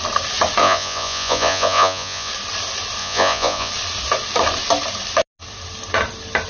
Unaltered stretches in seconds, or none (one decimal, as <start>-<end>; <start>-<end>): 0.0-0.6; 2.3-3.0; 3.7-6.5